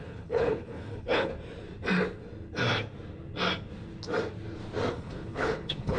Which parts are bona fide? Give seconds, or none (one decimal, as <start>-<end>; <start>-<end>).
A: 1.3-4.9